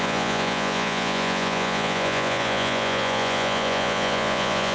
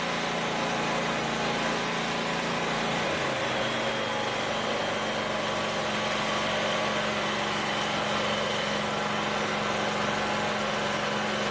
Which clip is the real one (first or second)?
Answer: second